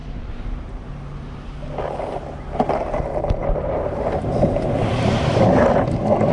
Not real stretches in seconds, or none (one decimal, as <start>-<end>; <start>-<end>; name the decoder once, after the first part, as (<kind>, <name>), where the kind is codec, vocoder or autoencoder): 0.0-0.9 (vocoder, BigVGAN v2); 3.4-5.4